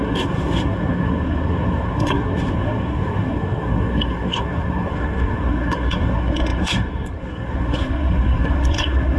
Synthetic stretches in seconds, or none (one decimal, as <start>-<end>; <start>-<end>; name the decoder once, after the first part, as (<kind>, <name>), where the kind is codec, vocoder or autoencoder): 0.0-9.2 (codec, SNAC)